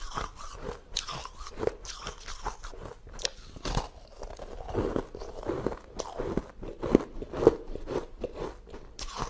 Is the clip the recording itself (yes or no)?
yes